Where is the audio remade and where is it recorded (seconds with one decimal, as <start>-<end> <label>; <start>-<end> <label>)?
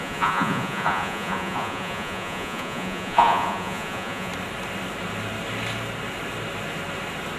0.0-4.3 remade; 4.3-7.4 recorded